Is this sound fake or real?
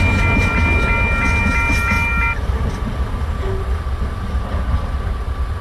real